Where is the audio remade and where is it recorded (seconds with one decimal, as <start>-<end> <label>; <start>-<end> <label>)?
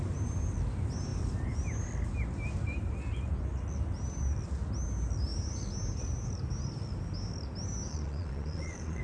0.0-7.9 recorded; 7.9-9.0 remade